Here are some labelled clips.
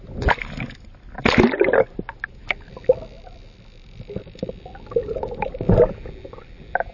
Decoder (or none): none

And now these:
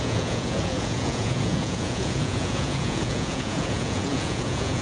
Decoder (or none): vocoder, Vocos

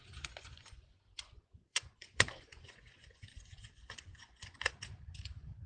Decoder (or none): vocoder, Vocos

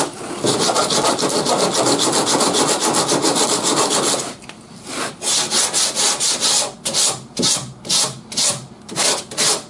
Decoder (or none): none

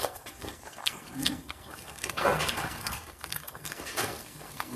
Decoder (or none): codec, SNAC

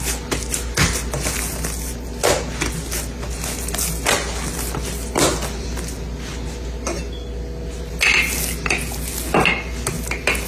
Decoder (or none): none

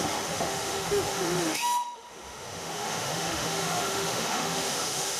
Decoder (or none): autoencoder, DAC-VAE